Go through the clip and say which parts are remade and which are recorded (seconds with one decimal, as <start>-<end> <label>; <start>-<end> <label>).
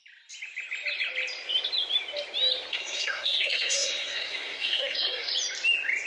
0.0-2.7 recorded; 2.7-5.3 remade; 5.3-6.1 recorded